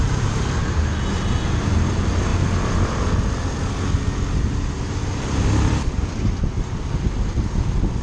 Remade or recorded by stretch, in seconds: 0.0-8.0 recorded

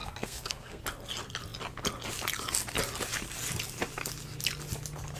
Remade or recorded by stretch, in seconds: 0.0-0.8 remade; 0.8-5.2 recorded